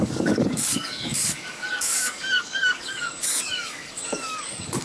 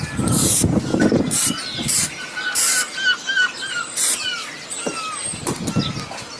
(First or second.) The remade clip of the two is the first